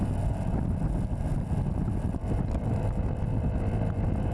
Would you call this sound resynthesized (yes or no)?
no